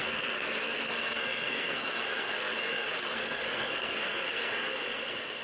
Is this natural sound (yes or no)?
no